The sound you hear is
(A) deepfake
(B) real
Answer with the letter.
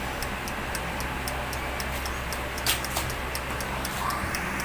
B